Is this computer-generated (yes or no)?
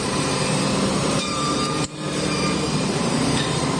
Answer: yes